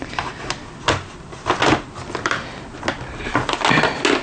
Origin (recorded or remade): recorded